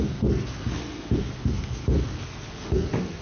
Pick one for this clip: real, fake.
fake